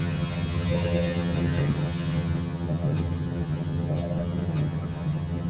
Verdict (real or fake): fake